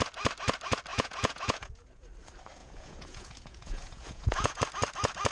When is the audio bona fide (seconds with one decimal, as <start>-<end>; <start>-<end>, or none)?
0.0-0.9; 2.1-2.6; 4.6-5.3